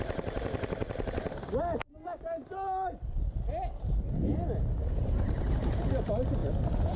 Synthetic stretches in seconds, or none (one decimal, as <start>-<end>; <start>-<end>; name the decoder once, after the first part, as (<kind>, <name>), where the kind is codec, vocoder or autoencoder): none